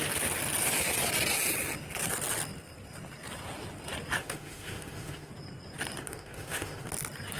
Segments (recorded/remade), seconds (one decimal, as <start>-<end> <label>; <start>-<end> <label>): 0.0-4.2 recorded; 4.2-5.3 remade; 5.3-6.0 recorded; 6.0-6.9 remade; 6.9-7.4 recorded